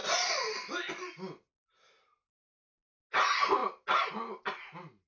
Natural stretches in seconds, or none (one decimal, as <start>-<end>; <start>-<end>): 0.0-5.1